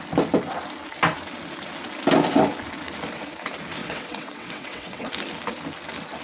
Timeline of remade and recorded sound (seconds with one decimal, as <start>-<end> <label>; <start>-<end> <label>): 0.0-3.8 recorded; 3.8-5.1 remade; 5.1-6.2 recorded